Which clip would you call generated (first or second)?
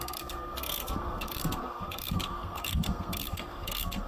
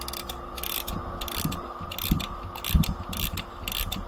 first